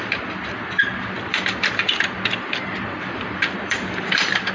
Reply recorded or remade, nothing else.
remade